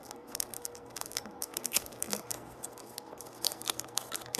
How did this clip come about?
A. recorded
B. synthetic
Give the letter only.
B